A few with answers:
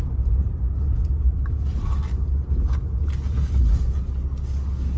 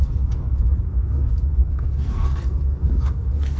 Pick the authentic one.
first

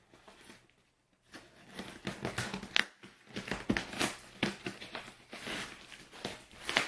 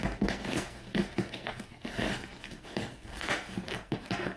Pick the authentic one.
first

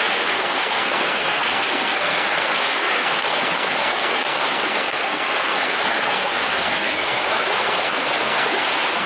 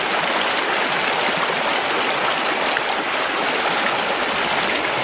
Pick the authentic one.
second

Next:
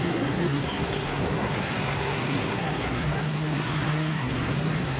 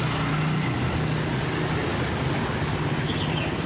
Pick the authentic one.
second